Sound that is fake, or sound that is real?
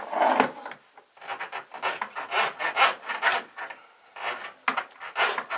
real